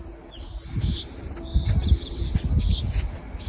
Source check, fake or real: real